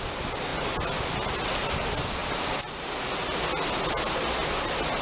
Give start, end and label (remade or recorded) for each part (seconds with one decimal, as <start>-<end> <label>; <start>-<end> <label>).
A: 0.0-5.0 recorded